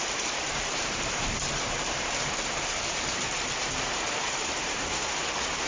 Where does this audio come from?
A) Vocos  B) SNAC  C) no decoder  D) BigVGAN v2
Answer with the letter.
D